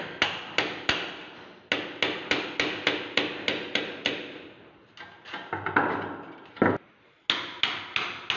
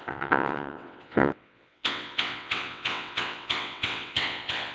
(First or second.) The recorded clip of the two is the first